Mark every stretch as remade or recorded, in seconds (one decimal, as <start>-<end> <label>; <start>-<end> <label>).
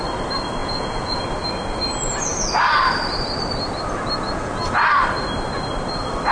0.0-0.6 recorded; 0.6-1.2 remade; 1.2-6.3 recorded